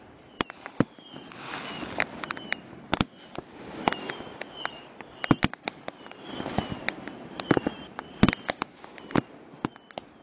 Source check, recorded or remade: recorded